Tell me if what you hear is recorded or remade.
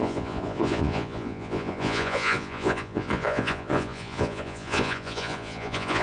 remade